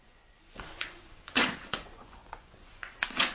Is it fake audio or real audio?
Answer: fake